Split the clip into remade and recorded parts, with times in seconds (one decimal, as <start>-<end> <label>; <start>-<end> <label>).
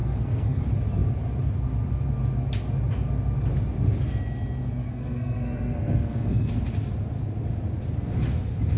0.0-0.6 remade; 0.6-4.8 recorded; 4.8-6.5 remade; 6.5-8.8 recorded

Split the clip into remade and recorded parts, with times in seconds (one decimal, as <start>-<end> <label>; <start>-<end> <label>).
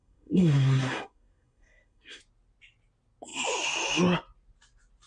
0.0-2.2 remade; 2.2-5.1 recorded